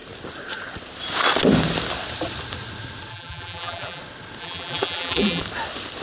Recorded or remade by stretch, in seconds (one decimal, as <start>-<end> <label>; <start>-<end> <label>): 0.0-3.1 recorded; 3.1-4.0 remade; 4.0-4.4 recorded; 4.4-5.4 remade; 5.4-6.0 recorded